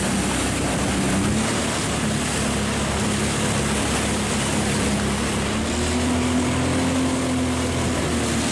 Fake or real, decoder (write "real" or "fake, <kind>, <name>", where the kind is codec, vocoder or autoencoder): real